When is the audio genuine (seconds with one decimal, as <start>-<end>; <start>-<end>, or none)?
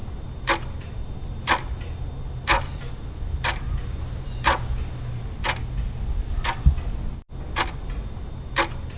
0.0-9.0